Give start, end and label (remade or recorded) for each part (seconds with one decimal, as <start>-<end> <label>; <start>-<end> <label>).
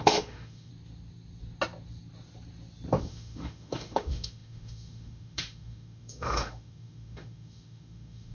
0.0-0.7 remade; 0.7-3.0 recorded; 3.0-8.3 remade